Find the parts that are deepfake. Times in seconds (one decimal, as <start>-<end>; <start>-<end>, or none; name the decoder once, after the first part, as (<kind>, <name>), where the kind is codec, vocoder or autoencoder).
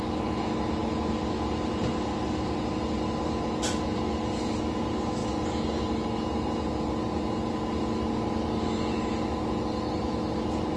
none